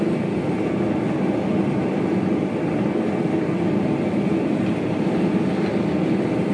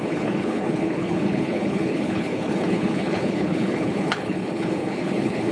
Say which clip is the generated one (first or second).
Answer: second